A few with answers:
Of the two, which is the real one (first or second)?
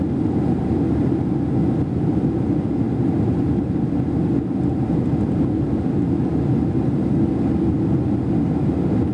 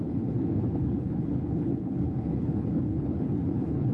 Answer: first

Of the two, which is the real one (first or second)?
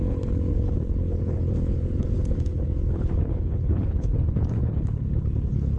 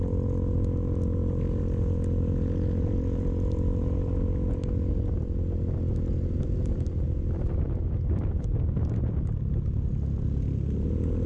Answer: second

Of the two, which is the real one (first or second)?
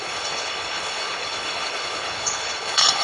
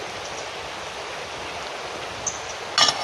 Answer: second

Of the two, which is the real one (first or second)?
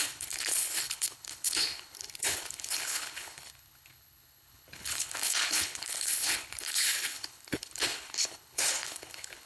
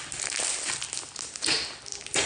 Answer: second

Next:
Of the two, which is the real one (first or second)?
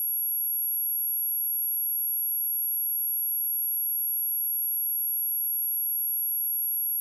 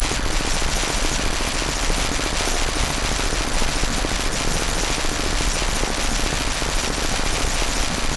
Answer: first